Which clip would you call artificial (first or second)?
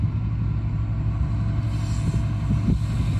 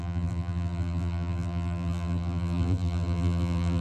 second